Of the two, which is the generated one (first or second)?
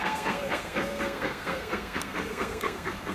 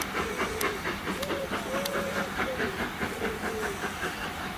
first